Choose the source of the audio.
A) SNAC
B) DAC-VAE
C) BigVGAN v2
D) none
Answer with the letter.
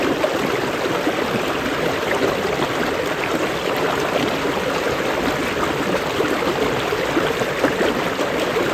D